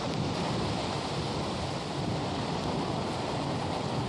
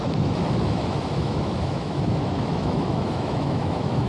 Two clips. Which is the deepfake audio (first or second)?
second